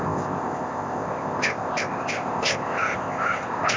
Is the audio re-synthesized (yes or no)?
yes